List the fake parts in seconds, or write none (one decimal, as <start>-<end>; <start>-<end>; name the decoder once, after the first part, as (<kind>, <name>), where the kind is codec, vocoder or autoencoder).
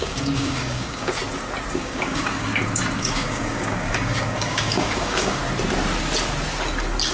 0.0-1.2 (codec, DAC); 1.7-2.5; 3.0-5.4